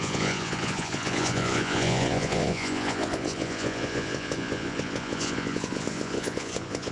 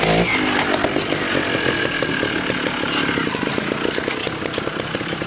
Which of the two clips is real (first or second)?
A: second